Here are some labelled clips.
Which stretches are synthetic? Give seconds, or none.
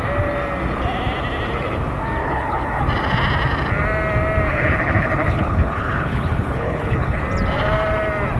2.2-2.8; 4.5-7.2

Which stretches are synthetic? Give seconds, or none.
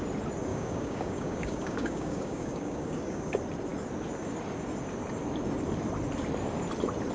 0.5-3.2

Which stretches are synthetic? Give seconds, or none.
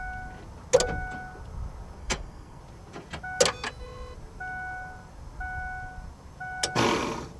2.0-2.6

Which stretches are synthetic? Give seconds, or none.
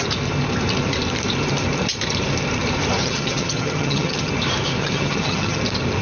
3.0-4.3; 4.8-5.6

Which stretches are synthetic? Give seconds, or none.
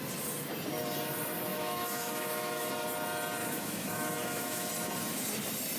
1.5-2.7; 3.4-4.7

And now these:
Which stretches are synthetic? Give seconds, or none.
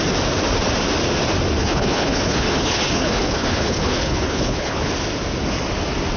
1.6-4.9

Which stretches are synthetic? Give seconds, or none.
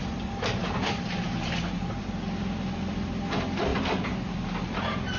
0.6-2.0; 3.7-4.3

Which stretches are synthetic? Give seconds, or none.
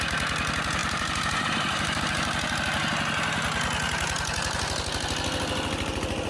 0.8-2.0